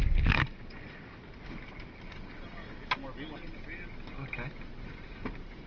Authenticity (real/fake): real